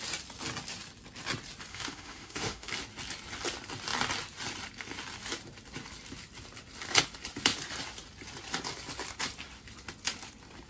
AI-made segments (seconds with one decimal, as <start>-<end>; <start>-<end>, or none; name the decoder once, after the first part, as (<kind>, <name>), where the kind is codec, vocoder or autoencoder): 1.7-2.7 (autoencoder, DAC-VAE)